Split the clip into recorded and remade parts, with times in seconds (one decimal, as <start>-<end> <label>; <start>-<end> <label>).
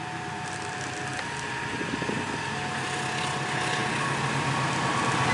0.0-5.3 recorded